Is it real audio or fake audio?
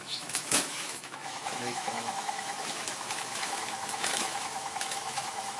fake